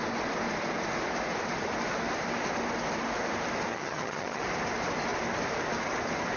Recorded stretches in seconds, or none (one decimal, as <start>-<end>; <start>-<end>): 0.0-3.7; 4.4-6.4

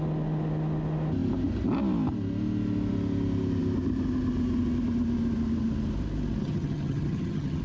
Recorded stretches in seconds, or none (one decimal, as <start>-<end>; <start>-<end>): 0.0-6.4

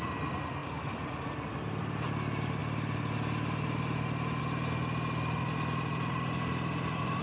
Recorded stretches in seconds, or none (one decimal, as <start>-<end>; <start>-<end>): 0.0-7.2

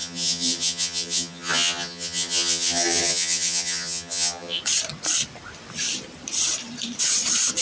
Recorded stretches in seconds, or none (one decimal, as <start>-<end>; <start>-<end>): 4.6-7.6